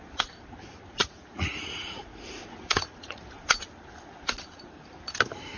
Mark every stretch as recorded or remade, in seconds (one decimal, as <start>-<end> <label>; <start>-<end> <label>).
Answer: 0.0-1.0 recorded; 1.0-3.2 remade; 3.2-5.6 recorded